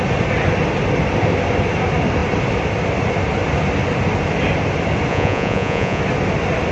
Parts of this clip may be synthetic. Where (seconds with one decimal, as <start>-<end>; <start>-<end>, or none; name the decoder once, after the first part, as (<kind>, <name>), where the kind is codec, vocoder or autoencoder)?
5.1-6.0 (vocoder, Vocos)